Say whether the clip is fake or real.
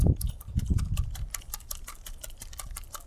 real